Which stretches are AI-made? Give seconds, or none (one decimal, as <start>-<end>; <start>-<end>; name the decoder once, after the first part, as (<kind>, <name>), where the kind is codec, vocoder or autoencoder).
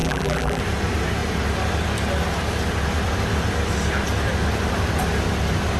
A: 0.0-0.6 (vocoder, BigVGAN v2)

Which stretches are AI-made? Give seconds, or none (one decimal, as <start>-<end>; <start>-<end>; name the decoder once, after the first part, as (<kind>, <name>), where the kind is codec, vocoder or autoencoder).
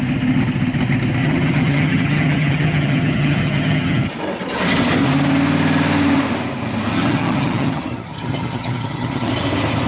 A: 1.2-4.1 (vocoder, HiFi-GAN); 6.9-9.3